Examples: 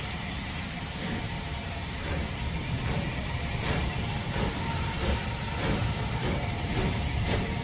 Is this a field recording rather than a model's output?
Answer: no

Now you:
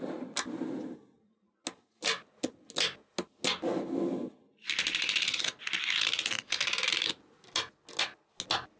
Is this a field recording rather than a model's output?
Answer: yes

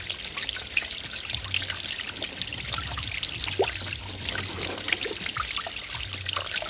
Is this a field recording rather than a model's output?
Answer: yes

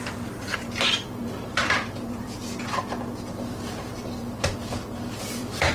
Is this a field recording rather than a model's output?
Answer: no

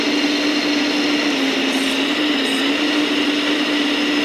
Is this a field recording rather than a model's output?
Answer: yes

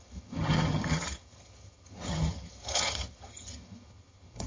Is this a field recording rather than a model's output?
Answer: no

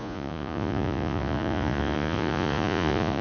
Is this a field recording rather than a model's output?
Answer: no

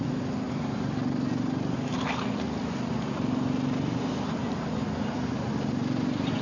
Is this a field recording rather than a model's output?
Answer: yes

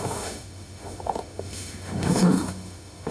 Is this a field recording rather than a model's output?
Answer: no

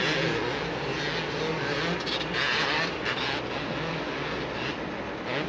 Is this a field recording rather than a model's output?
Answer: yes